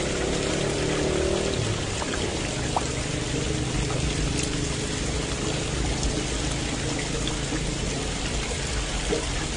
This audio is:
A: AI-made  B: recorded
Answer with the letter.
B